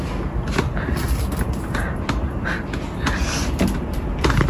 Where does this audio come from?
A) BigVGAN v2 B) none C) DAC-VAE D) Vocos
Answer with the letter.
B